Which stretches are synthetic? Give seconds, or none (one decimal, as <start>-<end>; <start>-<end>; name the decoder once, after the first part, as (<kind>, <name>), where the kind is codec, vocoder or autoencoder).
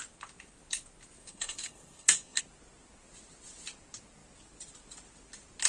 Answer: 1.2-2.4 (codec, SNAC)